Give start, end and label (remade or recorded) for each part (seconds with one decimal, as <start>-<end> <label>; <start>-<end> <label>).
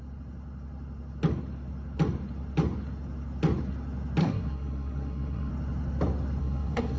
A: 0.0-4.2 recorded; 4.2-5.5 remade; 5.5-6.4 recorded; 6.4-7.0 remade